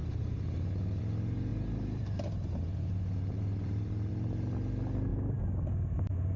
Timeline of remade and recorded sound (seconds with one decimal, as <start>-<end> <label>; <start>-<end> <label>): 0.0-1.0 remade; 1.0-1.5 recorded; 1.5-4.1 remade; 4.1-5.1 recorded; 5.1-5.7 remade; 5.7-6.4 recorded